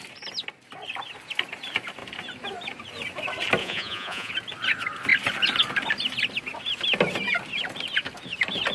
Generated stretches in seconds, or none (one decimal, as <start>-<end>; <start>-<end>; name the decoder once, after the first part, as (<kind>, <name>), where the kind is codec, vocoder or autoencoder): 3.6-4.3 (vocoder, Vocos)